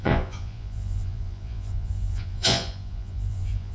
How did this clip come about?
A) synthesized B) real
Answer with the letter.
A